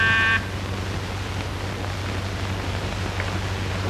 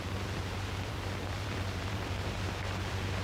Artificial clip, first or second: second